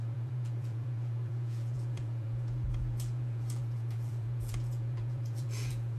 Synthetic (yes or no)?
yes